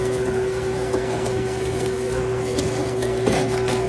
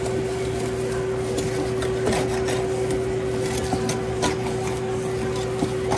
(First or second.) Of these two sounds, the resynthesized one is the first